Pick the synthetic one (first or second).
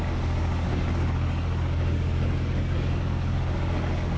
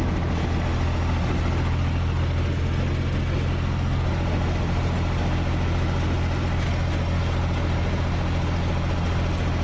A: first